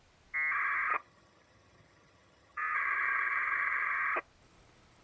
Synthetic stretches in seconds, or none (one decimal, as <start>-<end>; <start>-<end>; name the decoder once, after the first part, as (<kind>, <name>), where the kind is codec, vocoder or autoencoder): 0.9-3.9 (vocoder, HiFi-GAN)